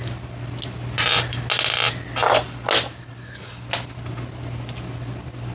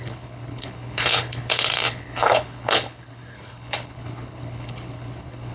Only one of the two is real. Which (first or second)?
first